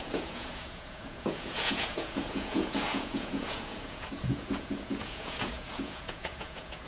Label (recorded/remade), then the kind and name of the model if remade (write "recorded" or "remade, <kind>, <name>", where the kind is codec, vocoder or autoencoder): remade, vocoder, Vocos